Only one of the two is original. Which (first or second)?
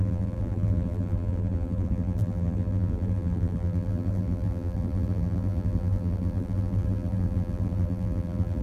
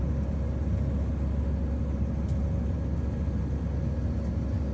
second